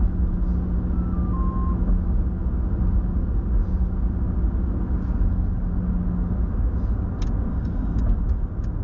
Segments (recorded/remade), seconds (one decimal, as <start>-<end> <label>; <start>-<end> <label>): 0.0-7.5 recorded; 7.5-8.0 remade; 8.0-8.8 recorded